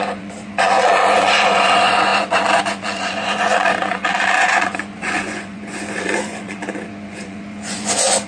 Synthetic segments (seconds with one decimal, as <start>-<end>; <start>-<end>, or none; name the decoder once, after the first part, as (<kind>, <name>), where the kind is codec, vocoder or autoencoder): 0.0-8.3 (vocoder, Vocos)